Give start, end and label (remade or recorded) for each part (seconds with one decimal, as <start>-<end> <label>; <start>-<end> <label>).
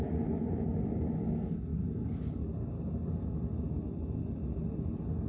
0.0-5.3 recorded